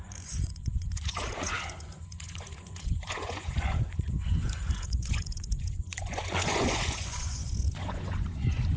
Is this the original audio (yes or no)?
no